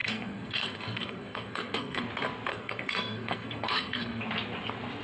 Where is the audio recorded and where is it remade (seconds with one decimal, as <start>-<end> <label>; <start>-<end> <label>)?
0.0-2.0 remade; 2.0-2.5 recorded; 2.5-4.2 remade; 4.2-5.0 recorded